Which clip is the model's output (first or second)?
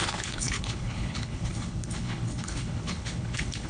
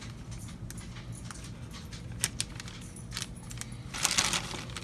first